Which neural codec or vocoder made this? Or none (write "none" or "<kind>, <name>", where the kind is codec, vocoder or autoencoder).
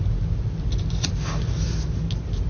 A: none